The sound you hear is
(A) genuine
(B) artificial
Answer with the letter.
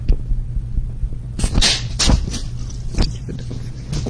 A